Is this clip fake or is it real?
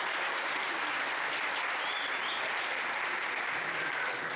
real